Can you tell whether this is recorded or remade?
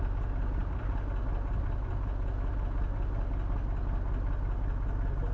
recorded